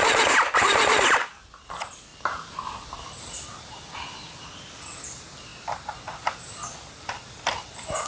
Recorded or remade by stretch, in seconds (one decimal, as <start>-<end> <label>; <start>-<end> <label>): 0.0-2.1 remade; 2.1-4.3 recorded; 4.3-8.1 remade